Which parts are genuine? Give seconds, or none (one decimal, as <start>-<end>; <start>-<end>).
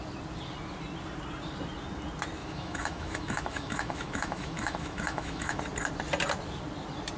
0.0-2.4; 5.6-7.2